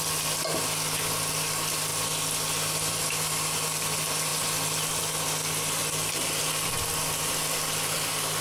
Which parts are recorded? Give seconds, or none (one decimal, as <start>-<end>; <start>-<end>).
0.0-8.4